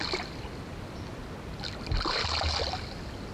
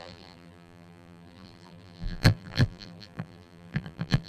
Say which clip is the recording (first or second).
first